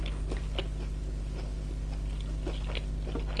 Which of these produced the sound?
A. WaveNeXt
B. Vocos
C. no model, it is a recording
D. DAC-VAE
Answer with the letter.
C